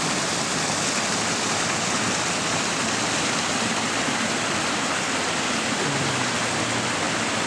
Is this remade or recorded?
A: recorded